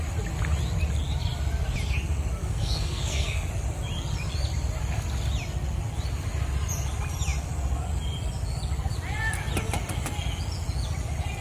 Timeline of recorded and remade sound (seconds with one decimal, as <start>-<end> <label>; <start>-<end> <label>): 0.0-2.4 recorded; 2.4-3.5 remade; 3.5-11.4 recorded